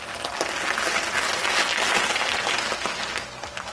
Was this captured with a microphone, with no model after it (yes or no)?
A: yes